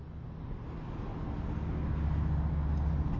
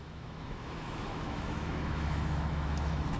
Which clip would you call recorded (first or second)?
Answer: first